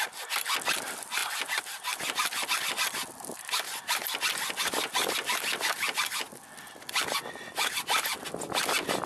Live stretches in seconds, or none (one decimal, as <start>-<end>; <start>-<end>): 0.0-9.1